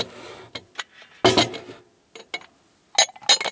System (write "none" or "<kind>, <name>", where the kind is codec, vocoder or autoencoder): none